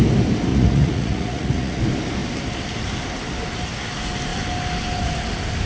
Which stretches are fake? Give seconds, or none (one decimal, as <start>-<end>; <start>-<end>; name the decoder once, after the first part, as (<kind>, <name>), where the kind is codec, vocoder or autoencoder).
0.5-1.8 (vocoder, Vocos)